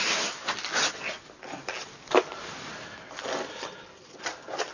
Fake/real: real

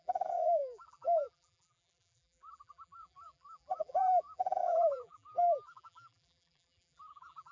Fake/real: fake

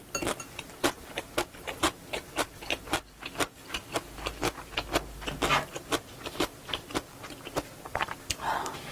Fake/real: real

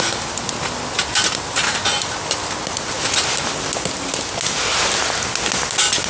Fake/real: real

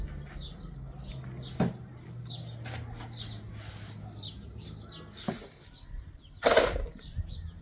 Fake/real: real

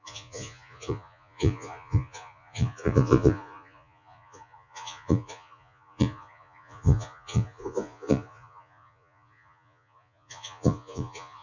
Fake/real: fake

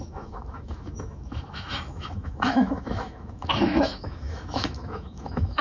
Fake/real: fake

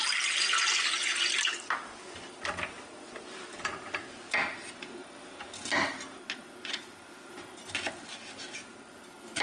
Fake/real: real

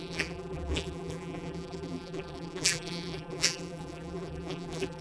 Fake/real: fake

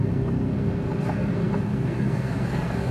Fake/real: fake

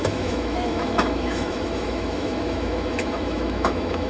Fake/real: fake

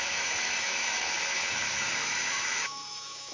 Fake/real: fake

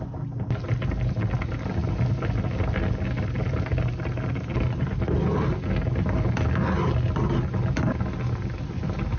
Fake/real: real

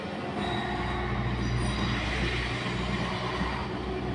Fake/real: real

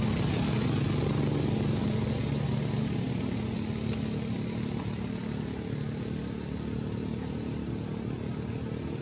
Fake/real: real